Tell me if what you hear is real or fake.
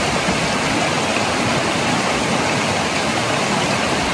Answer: real